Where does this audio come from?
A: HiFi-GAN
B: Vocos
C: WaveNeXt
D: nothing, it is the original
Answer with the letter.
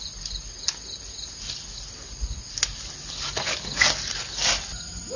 D